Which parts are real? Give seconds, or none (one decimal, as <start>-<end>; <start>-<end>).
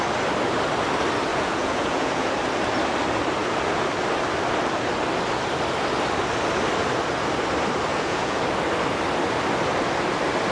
0.0-1.3; 2.3-7.9; 8.4-10.5